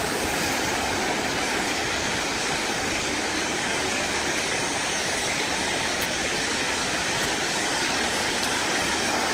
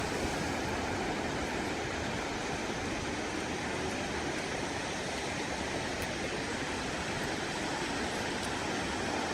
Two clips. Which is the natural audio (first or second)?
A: second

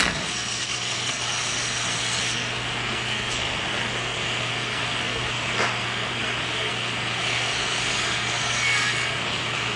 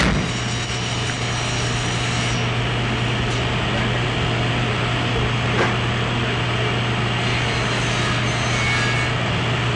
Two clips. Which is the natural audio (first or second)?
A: second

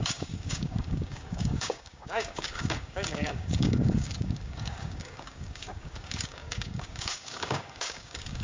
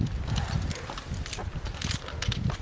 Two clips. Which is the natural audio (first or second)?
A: second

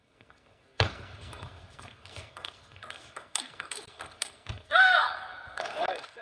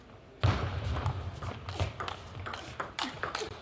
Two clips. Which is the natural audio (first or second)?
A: second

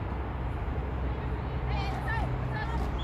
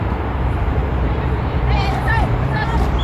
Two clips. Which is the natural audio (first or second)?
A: first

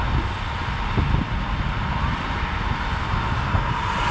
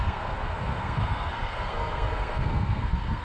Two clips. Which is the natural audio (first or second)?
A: first